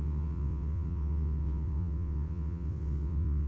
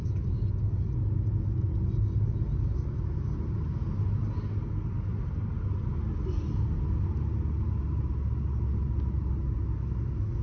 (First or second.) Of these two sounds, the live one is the second